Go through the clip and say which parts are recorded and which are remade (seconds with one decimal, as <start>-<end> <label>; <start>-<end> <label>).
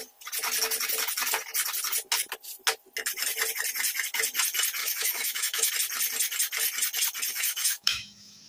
0.0-4.8 recorded; 4.8-5.7 remade; 5.7-7.3 recorded; 7.3-8.5 remade